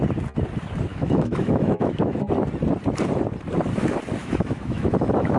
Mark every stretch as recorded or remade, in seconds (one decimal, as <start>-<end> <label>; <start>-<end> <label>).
0.0-0.9 recorded; 0.9-2.3 remade; 2.3-4.2 recorded; 4.2-5.4 remade